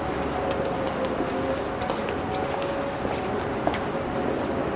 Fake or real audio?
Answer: real